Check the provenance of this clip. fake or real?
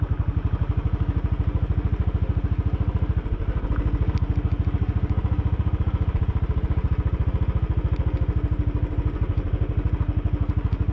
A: real